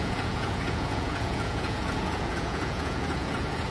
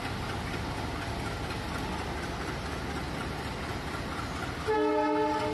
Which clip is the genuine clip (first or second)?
second